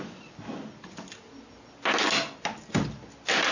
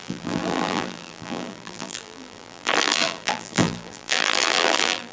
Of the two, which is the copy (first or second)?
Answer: second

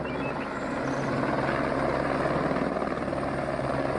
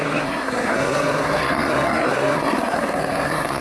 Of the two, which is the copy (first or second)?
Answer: second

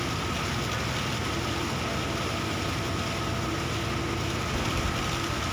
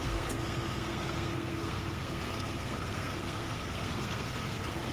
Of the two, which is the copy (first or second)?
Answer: second